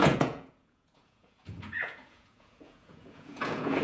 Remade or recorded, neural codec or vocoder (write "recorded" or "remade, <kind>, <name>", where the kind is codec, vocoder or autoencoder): remade, vocoder, Vocos